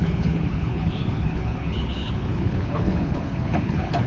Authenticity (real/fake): fake